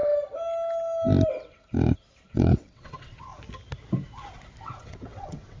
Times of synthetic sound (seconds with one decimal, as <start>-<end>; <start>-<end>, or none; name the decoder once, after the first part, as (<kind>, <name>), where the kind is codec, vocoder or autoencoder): 2.3-3.3 (vocoder, WaveNeXt); 4.6-5.6